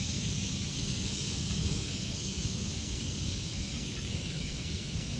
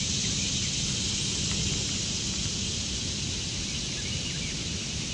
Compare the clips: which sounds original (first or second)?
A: second